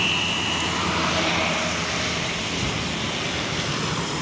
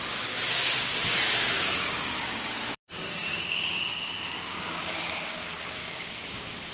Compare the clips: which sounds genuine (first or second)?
first